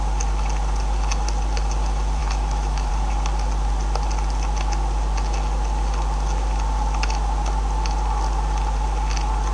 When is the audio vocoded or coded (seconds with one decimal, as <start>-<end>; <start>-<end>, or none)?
2.2-2.9